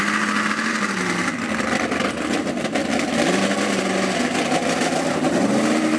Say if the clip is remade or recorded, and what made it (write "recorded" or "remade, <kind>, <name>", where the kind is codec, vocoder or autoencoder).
recorded